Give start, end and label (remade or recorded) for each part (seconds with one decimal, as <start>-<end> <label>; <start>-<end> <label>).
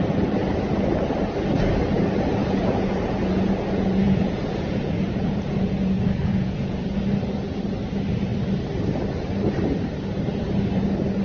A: 0.0-2.4 recorded; 2.4-6.8 remade; 6.8-11.2 recorded